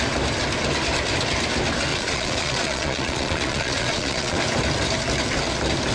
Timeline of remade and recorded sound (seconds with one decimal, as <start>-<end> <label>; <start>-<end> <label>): 0.0-1.9 recorded; 1.9-4.4 remade; 4.4-5.9 recorded